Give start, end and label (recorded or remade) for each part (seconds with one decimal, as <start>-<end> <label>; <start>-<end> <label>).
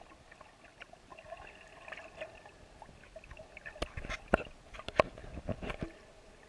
0.0-6.5 recorded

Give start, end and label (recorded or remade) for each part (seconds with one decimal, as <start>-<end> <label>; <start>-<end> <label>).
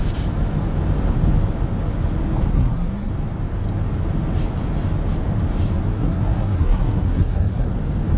0.0-2.5 recorded; 2.5-3.1 remade; 3.1-5.9 recorded; 5.9-7.7 remade; 7.7-8.2 recorded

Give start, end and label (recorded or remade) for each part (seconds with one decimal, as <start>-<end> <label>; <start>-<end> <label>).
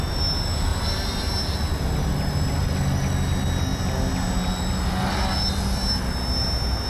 0.0-6.9 recorded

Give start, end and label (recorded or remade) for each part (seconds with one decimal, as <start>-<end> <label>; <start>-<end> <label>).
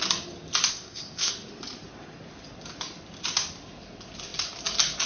0.0-0.7 recorded; 0.7-1.3 remade; 1.3-5.1 recorded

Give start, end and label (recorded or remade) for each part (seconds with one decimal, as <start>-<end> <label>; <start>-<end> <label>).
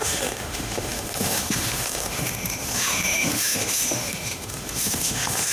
0.0-5.5 remade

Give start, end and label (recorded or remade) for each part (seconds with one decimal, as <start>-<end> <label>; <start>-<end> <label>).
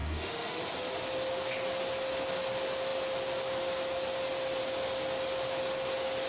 0.0-0.6 remade; 0.6-6.3 recorded